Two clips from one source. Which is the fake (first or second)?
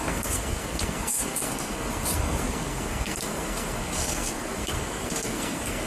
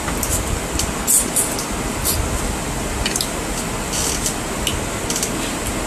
first